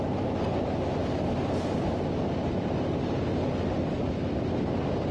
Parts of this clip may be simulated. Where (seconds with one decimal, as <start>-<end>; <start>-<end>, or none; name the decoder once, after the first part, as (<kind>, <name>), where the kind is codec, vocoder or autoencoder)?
none